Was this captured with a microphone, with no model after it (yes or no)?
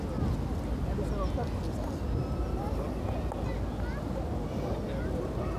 yes